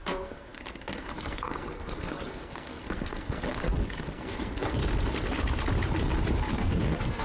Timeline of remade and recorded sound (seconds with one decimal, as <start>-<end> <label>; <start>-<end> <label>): 0.0-4.8 remade; 4.8-6.5 recorded; 6.5-7.2 remade